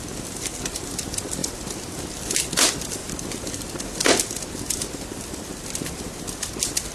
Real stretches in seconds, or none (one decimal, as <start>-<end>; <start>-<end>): 0.0-6.9